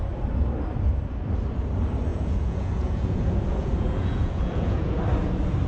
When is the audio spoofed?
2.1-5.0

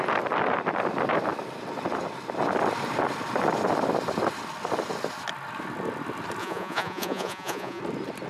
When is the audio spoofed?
6.4-7.8

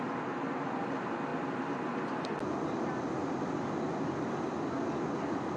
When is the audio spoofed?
none

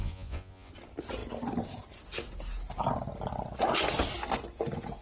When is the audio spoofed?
0.0-0.7